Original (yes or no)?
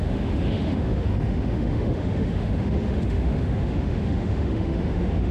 no